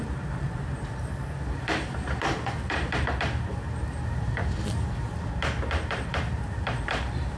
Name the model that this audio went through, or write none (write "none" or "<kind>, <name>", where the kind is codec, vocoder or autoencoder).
vocoder, BigVGAN v2